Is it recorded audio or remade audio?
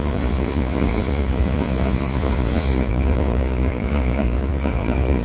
remade